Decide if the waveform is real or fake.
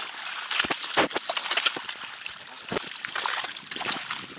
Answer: real